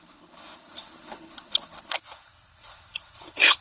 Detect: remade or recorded remade